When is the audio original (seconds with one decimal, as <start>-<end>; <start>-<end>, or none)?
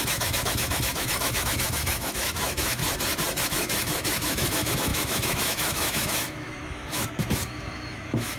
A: 2.8-3.4